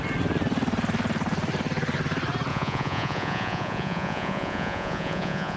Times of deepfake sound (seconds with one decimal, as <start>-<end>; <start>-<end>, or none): 2.5-5.6